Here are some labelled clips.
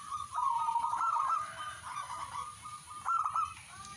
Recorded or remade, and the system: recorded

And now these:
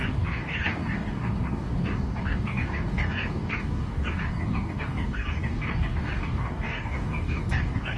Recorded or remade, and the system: remade, codec, DAC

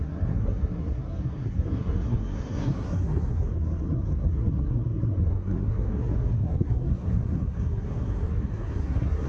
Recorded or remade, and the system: remade, codec, SNAC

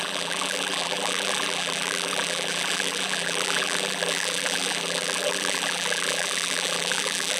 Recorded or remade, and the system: remade, vocoder, BigVGAN v2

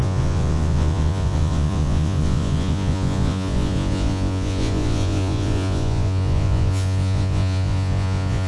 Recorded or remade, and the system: remade, vocoder, Vocos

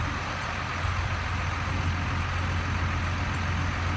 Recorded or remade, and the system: recorded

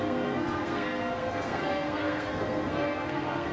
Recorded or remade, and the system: remade, codec, SNAC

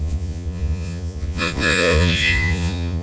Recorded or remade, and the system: remade, vocoder, Vocos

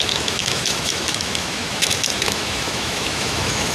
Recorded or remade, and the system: remade, autoencoder, DAC-VAE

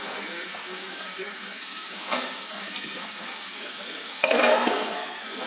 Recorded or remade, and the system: remade, codec, SNAC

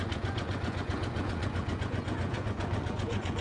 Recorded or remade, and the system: remade, vocoder, Vocos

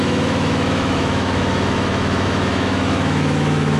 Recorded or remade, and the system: remade, autoencoder, DAC-VAE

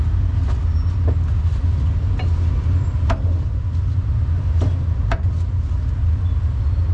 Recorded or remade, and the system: recorded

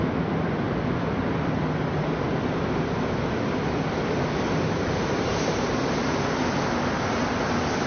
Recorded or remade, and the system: recorded